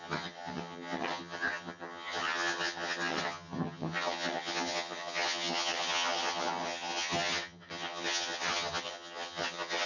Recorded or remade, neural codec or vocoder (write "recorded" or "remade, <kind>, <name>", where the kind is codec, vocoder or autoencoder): remade, vocoder, HiFi-GAN